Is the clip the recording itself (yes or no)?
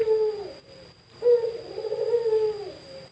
yes